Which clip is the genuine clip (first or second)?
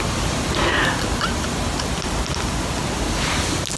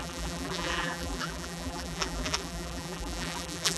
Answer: first